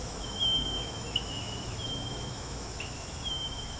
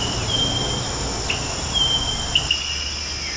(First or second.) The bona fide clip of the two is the second